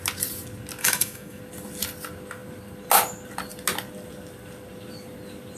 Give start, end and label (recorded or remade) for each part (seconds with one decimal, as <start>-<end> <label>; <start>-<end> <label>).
0.0-0.8 recorded; 0.8-1.4 remade; 1.4-5.6 recorded